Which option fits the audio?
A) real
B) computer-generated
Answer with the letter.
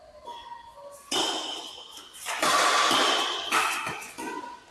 A